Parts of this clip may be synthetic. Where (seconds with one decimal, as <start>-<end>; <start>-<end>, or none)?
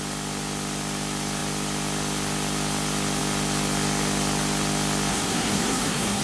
5.1-6.2